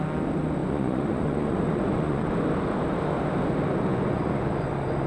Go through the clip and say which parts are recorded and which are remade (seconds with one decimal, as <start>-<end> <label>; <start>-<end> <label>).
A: 0.0-0.6 recorded; 0.6-2.3 remade; 2.3-3.9 recorded; 3.9-5.1 remade